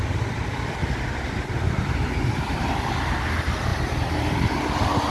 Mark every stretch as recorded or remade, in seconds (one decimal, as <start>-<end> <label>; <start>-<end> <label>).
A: 0.0-5.1 recorded